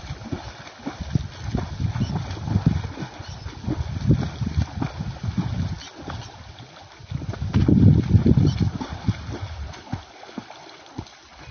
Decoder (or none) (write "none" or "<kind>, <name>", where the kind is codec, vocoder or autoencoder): none